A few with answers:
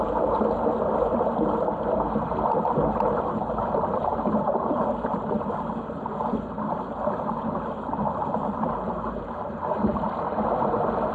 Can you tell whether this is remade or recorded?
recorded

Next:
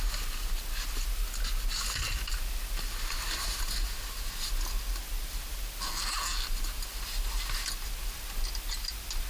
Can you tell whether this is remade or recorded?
recorded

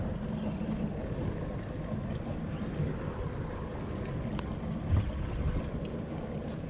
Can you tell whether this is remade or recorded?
recorded